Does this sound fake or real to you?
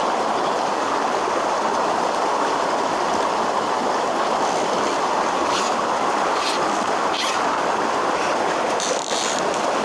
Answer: real